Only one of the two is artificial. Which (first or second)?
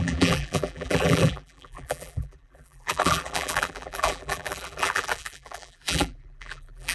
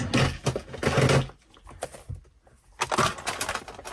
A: first